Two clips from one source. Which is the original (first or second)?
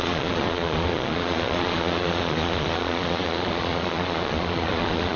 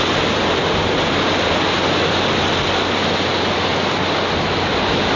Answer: second